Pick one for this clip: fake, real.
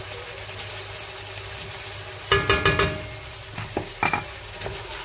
real